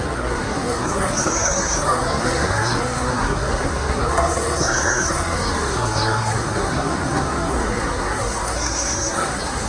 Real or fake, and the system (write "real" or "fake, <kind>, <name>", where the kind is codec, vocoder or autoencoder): fake, codec, SNAC